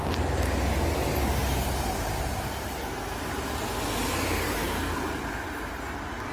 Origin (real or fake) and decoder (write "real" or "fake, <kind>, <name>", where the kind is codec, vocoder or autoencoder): real